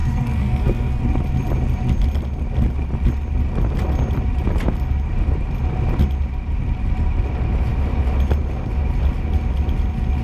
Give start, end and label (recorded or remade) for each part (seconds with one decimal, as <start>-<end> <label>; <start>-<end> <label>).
0.0-1.0 remade; 1.0-10.2 recorded